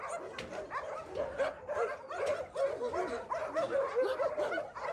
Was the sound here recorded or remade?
recorded